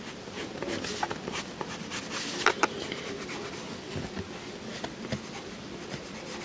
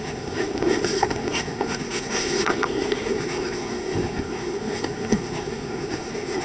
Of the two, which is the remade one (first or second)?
second